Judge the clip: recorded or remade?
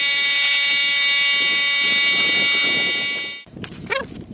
recorded